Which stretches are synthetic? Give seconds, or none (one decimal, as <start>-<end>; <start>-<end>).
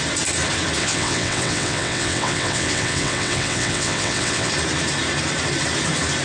0.8-4.5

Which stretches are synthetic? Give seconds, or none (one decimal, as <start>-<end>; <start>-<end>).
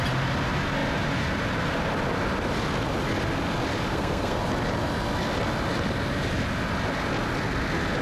3.9-4.4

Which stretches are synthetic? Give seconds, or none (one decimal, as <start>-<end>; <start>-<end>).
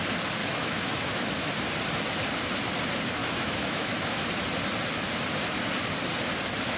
0.4-1.5; 3.2-4.3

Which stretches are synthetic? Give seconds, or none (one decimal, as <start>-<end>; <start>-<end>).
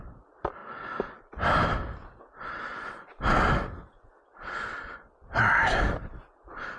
0.0-0.6; 2.3-2.7; 5.6-6.8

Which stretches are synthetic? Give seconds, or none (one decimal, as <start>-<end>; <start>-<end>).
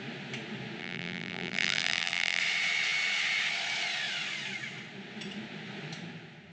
0.8-2.4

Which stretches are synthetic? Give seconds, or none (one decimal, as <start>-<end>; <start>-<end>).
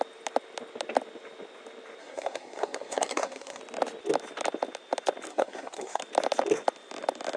2.0-3.6; 5.3-6.0